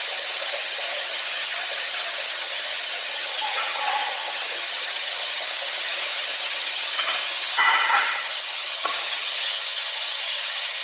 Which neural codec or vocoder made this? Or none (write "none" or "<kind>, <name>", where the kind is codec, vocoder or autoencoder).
vocoder, HiFi-GAN